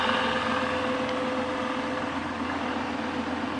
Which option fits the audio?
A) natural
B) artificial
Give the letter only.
A